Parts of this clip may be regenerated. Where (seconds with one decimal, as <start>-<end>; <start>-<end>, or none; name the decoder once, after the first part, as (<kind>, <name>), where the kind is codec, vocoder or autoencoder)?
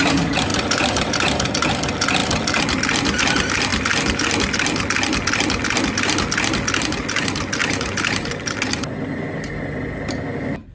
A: 0.5-1.5 (vocoder, BigVGAN v2); 7.6-8.4